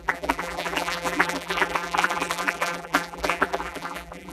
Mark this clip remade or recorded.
remade